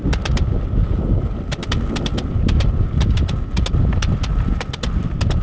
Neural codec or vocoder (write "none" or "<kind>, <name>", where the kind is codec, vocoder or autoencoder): none